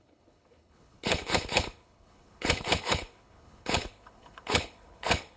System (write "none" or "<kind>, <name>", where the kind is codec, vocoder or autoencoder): codec, HILCodec